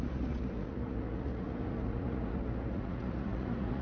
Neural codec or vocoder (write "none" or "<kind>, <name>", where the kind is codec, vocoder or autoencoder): vocoder, Vocos